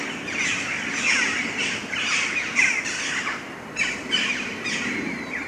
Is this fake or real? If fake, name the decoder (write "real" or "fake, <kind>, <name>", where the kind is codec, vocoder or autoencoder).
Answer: real